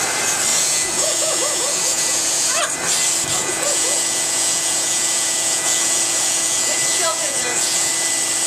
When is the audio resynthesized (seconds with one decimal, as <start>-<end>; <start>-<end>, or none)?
0.5-2.6; 3.4-7.9